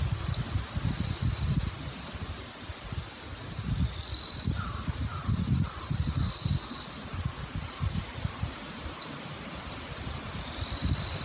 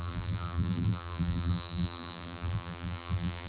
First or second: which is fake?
second